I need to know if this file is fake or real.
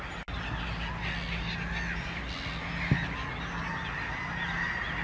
real